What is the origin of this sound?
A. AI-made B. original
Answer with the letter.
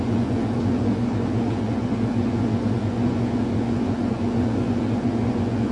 A